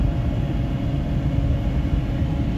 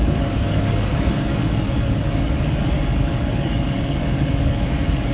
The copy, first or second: second